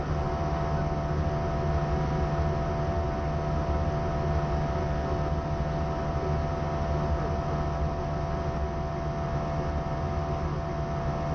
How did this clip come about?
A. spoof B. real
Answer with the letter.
B